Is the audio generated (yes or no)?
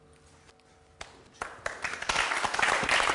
no